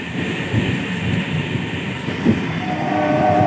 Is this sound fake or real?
fake